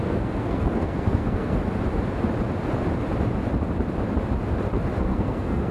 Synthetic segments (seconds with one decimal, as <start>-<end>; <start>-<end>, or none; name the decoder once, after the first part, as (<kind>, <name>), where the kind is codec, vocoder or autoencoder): 0.0-1.6 (codec, SNAC); 5.0-5.7